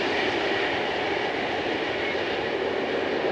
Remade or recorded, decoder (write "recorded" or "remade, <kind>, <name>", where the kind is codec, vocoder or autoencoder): recorded